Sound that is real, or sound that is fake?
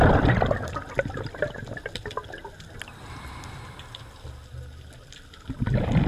real